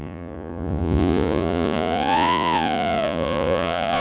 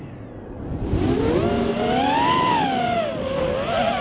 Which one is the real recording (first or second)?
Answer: second